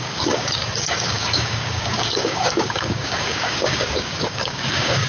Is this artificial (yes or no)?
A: yes